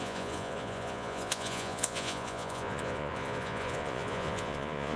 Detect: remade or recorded remade